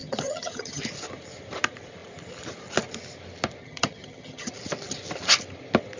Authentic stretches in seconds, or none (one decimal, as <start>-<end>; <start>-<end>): 0.8-3.6; 4.5-6.0